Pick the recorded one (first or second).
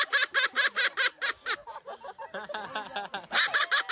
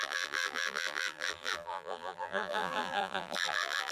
first